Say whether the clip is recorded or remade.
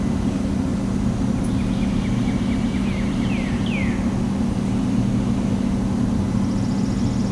recorded